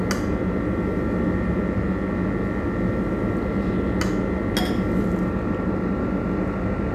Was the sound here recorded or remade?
recorded